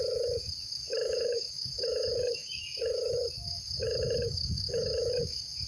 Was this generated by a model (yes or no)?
yes